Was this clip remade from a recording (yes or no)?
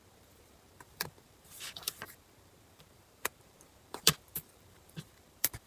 yes